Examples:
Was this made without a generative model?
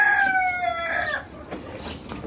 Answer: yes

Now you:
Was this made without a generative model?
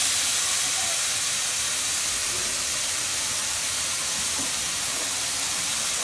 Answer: yes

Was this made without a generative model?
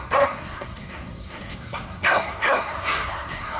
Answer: no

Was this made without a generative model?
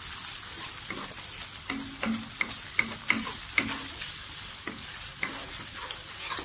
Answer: yes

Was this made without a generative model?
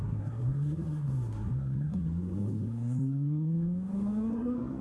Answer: no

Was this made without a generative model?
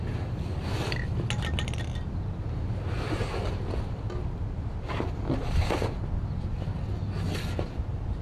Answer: yes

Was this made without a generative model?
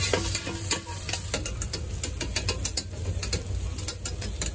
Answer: yes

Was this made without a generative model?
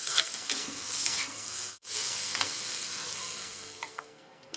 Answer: no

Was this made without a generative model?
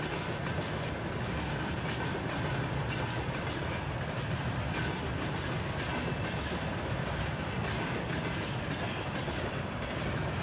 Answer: yes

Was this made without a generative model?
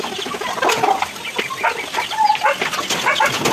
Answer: yes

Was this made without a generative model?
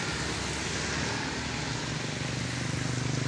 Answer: yes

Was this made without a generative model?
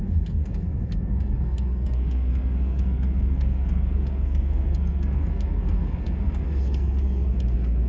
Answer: no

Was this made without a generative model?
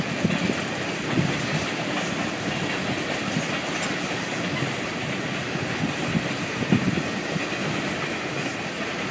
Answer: yes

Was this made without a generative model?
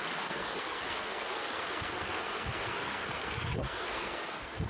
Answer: no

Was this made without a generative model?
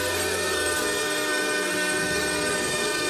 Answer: no